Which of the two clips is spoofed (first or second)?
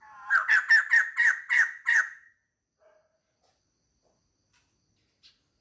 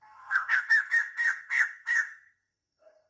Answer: second